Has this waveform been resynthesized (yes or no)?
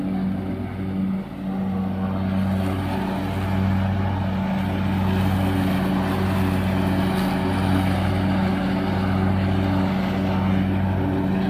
no